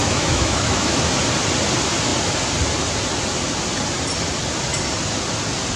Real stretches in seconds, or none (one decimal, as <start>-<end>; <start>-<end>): 1.0-5.8